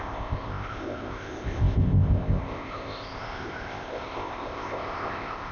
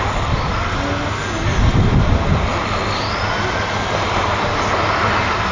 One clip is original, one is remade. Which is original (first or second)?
second